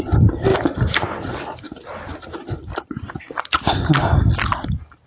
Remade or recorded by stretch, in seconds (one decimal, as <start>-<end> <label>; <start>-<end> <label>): 0.0-0.5 recorded; 0.5-3.6 remade; 3.6-5.1 recorded